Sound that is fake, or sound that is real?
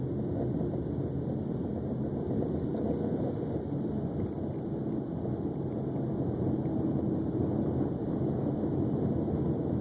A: real